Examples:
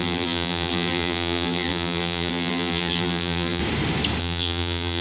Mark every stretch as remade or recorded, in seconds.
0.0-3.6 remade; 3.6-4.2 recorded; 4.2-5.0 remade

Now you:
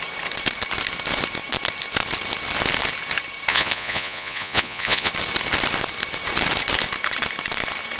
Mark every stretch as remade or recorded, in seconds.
0.0-3.5 recorded; 3.5-5.1 remade; 5.1-8.0 recorded

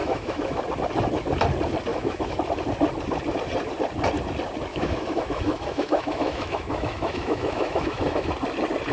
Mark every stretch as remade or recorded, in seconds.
0.0-0.6 remade; 0.6-1.9 recorded; 1.9-2.4 remade; 2.4-4.7 recorded; 4.7-8.3 remade; 8.3-8.9 recorded

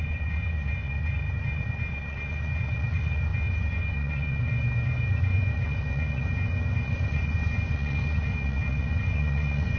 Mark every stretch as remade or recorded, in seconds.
0.0-9.8 remade

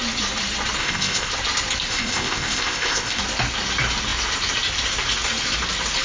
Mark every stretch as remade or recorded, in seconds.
0.0-0.8 recorded; 0.8-1.3 remade; 1.3-1.9 recorded; 1.9-3.2 remade; 3.2-6.0 recorded

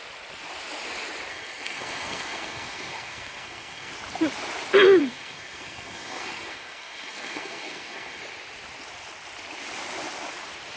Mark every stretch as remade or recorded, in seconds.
0.0-1.3 recorded; 1.3-3.9 remade; 3.9-5.0 recorded; 5.0-8.2 remade; 8.2-10.8 recorded